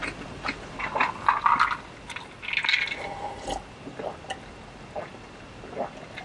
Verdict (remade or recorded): recorded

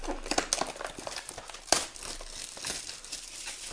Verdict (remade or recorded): recorded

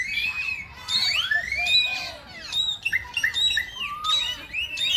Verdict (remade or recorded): remade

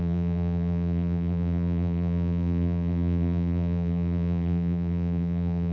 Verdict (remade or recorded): remade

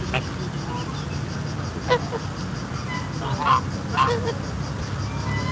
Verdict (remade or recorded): recorded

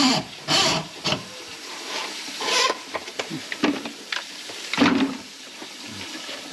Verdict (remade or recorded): remade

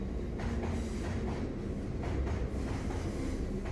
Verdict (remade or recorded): recorded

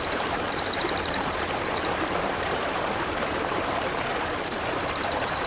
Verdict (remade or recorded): remade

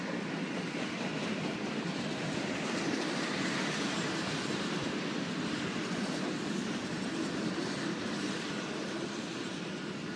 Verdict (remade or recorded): remade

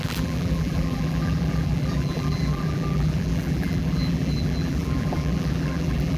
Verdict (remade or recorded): remade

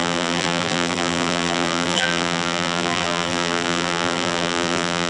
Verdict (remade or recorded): remade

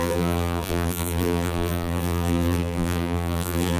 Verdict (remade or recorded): remade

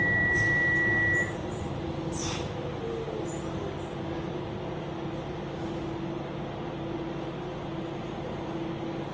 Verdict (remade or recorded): recorded